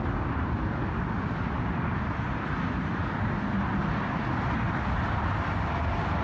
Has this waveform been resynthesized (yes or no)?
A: no